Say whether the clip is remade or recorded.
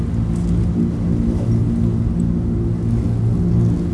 recorded